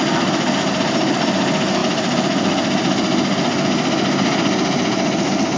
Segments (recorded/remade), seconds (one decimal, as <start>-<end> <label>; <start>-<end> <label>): 0.0-5.6 recorded